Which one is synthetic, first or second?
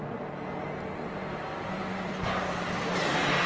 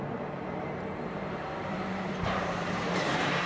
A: second